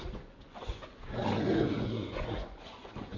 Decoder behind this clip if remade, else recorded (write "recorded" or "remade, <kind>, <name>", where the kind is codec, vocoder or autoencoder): remade, vocoder, Vocos